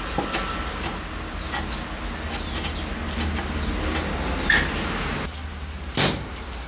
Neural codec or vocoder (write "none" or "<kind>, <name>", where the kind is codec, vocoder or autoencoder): none